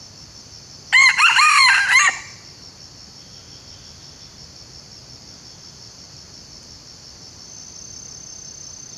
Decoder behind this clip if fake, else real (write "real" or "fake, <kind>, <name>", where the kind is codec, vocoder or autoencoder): real